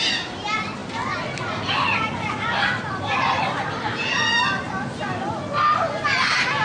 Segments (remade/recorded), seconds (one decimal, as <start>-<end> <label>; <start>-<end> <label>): 0.0-0.8 recorded; 0.8-3.5 remade; 3.5-6.6 recorded